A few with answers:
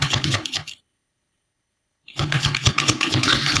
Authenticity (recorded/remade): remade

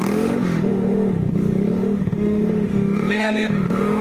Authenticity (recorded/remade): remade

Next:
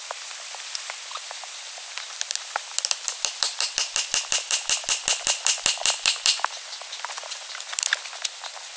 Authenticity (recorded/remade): remade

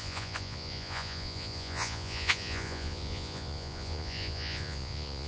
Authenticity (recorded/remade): remade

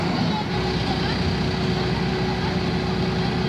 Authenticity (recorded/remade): recorded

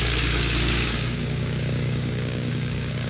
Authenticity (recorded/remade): remade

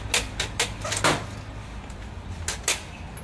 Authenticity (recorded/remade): recorded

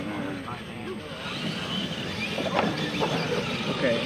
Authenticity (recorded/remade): recorded